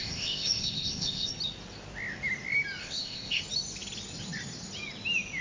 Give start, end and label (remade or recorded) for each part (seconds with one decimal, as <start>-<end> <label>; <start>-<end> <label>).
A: 0.0-1.3 remade; 1.3-2.8 recorded; 2.8-3.4 remade; 3.4-5.4 recorded